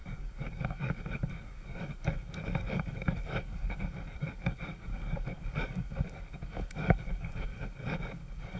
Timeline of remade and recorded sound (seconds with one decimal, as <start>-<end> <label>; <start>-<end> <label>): 0.0-8.6 remade

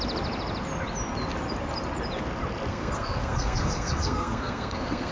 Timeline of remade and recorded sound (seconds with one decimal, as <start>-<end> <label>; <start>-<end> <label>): 0.0-2.7 recorded; 2.7-5.1 remade

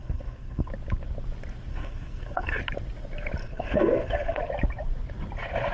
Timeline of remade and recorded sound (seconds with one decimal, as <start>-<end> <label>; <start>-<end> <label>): 0.0-0.7 remade; 0.7-1.7 recorded; 1.7-2.6 remade; 2.6-3.4 recorded; 3.4-4.4 remade; 4.4-5.7 recorded

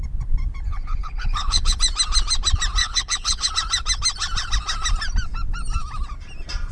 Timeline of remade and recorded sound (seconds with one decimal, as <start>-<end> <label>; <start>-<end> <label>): 0.0-0.7 recorded; 0.7-1.8 remade; 1.8-2.8 recorded; 2.8-3.5 remade; 3.5-6.7 recorded